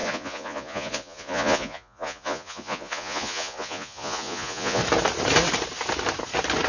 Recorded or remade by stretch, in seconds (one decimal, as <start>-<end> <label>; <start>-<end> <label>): 0.0-4.8 remade; 4.8-6.7 recorded